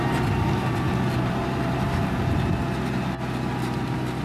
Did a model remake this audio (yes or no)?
no